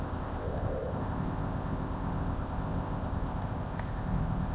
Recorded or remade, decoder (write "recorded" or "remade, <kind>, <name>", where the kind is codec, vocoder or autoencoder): remade, codec, ZipCodec